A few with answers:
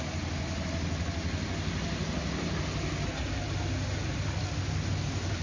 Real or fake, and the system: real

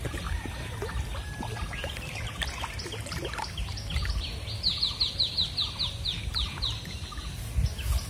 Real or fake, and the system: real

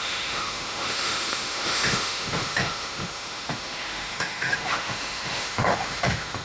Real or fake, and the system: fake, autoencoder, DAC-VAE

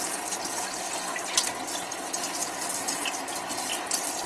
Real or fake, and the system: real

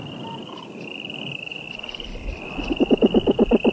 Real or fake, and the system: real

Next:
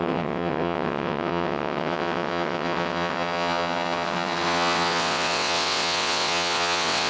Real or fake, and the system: fake, vocoder, WaveNeXt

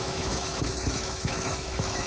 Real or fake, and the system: fake, autoencoder, DAC-VAE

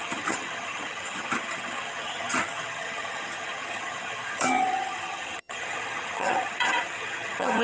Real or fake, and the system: fake, vocoder, HiFi-GAN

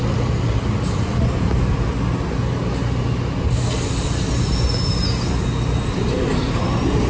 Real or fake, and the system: real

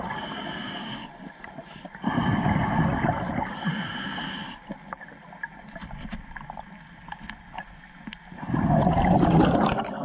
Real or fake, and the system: real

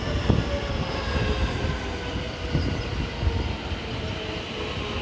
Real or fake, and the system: real